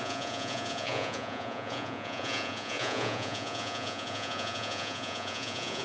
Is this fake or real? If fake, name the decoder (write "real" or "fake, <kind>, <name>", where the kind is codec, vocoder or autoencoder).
fake, vocoder, Vocos